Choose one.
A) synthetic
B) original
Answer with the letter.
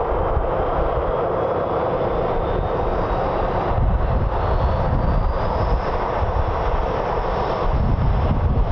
B